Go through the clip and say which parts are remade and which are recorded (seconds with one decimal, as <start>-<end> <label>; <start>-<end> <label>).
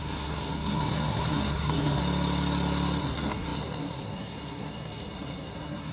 0.0-2.0 remade; 2.0-3.0 recorded; 3.0-5.9 remade